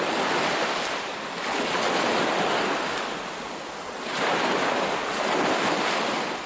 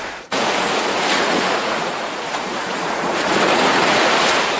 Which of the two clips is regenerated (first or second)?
second